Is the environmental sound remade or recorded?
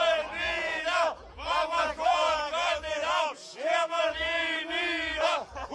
remade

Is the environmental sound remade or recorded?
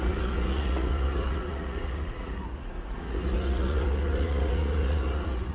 remade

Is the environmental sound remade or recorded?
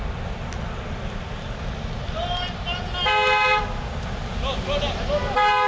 recorded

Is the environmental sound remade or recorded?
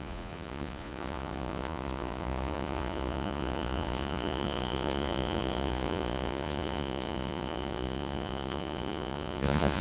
remade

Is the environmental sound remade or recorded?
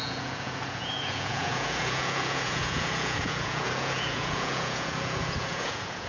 remade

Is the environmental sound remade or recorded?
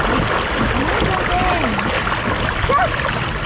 recorded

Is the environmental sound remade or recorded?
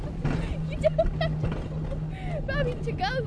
recorded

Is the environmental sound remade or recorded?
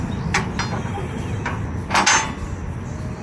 recorded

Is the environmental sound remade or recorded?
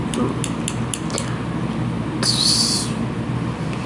recorded